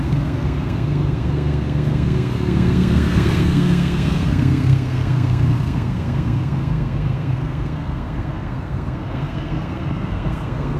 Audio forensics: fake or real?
fake